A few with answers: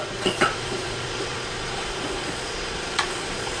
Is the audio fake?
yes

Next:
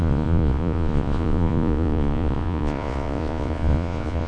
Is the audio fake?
yes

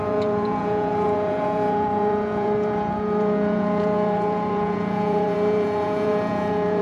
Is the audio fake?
yes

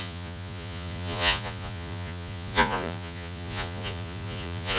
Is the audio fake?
yes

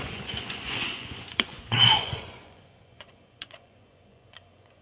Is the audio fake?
yes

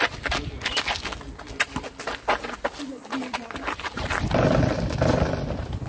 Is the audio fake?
no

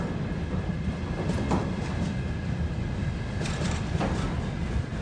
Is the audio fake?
no